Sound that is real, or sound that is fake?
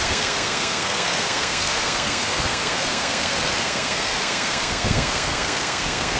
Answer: fake